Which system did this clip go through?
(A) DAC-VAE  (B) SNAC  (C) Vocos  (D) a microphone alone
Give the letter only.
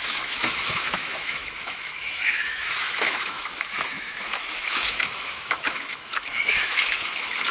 A